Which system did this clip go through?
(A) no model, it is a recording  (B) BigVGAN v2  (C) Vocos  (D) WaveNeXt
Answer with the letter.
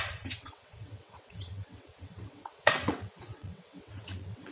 D